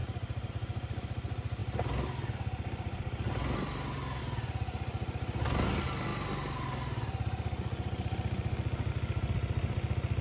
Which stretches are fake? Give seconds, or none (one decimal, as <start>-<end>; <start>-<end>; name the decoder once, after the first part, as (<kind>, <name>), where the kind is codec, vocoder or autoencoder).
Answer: none